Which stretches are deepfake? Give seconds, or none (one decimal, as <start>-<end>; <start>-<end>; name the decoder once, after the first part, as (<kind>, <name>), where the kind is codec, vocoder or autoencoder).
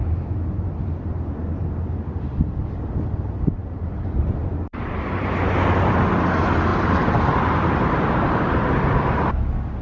0.0-2.1 (vocoder, BigVGAN v2); 3.6-4.4; 6.7-7.7